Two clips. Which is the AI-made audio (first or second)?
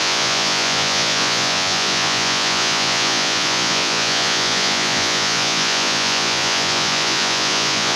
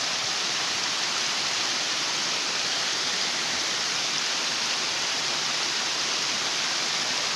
first